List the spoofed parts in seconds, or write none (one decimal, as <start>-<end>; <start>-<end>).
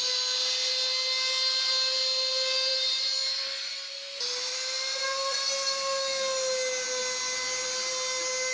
none